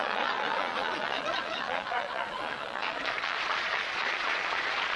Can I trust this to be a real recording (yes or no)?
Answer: no